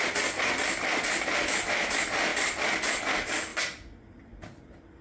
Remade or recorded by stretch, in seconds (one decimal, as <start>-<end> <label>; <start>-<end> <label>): 0.0-5.0 recorded